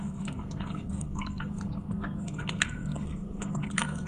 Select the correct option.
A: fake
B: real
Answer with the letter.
A